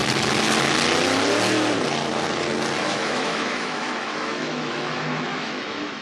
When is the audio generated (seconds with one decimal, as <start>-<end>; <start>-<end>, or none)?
2.8-6.0